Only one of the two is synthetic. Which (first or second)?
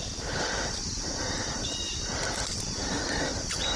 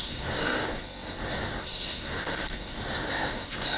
second